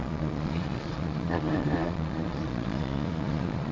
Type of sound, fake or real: fake